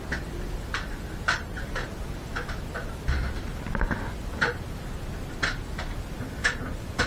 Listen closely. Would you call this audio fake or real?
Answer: real